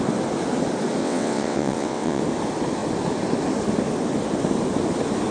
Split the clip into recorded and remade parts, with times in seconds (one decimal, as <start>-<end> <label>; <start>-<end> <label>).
0.0-1.0 recorded; 1.0-2.2 remade; 2.2-5.3 recorded